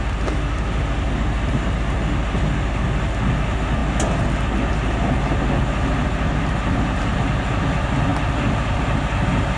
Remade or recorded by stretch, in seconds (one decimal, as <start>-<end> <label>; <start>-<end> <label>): 0.0-9.6 recorded